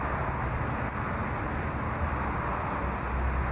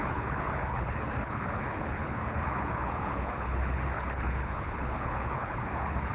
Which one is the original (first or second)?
first